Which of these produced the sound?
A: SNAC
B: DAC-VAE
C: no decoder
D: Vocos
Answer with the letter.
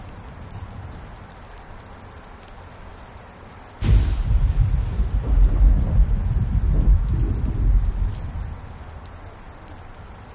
C